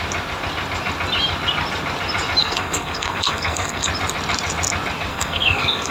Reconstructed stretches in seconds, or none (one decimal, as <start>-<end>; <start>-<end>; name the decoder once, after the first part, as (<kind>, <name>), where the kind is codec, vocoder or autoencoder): 2.4-3.9 (codec, SNAC); 5.1-5.9